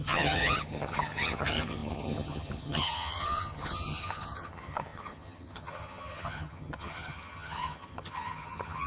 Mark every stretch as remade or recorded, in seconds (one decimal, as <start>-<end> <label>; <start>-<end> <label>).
0.0-8.9 remade